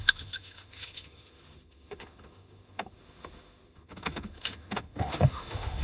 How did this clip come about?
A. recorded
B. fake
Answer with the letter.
B